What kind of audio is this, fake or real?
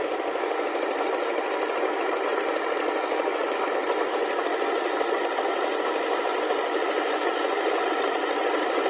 real